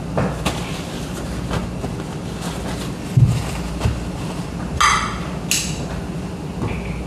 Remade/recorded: recorded